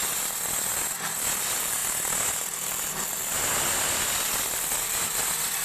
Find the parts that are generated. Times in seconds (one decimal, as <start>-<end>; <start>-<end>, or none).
none